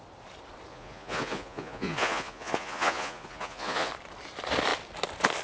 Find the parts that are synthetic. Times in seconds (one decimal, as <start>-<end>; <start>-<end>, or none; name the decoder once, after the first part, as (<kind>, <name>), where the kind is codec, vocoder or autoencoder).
0.7-3.9 (vocoder, Vocos)